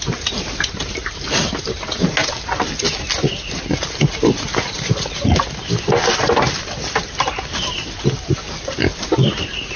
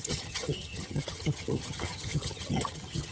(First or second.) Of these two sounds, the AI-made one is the second